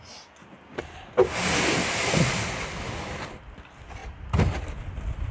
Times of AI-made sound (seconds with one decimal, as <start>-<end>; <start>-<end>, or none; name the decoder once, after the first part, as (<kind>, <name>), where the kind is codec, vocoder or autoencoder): 0.0-0.7 (vocoder, BigVGAN v2); 3.3-4.0; 4.6-5.3